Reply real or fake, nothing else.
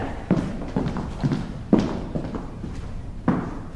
fake